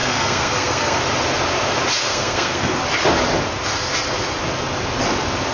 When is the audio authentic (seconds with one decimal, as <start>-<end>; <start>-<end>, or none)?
1.0-2.0; 2.8-5.5